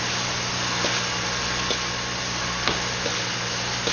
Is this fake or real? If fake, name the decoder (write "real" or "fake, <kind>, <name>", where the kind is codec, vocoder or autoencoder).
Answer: real